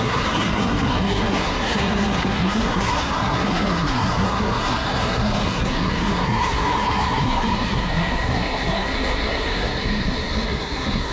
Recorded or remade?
remade